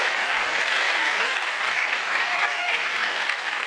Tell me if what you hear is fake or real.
fake